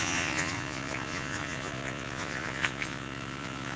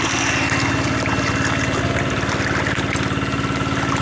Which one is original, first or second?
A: second